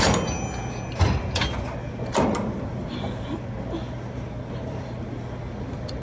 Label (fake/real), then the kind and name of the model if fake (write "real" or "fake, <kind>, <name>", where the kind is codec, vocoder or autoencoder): real